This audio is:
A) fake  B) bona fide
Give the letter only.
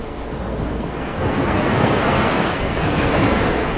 A